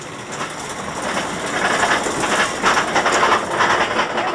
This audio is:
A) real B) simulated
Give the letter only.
A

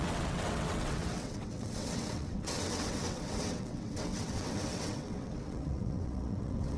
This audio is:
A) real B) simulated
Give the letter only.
B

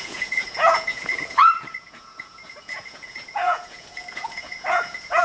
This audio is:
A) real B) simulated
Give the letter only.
B